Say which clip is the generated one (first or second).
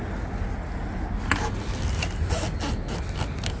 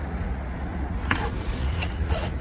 second